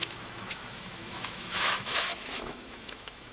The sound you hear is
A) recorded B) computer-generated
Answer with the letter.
B